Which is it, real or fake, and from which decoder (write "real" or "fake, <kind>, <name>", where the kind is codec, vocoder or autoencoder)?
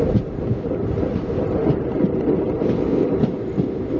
real